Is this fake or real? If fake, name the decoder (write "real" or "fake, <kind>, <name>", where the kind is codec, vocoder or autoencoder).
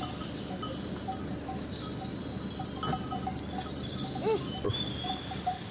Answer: real